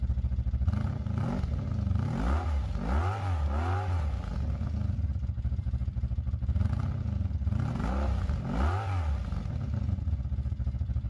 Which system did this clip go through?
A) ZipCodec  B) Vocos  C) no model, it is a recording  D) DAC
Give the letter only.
C